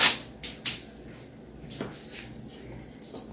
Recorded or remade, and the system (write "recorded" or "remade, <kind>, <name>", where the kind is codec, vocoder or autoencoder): recorded